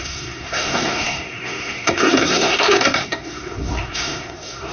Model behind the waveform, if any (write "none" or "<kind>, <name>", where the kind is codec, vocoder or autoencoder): codec, SNAC